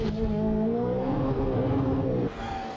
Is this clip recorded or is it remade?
remade